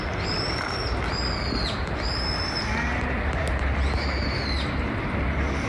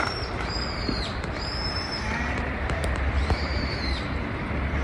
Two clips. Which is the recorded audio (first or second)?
first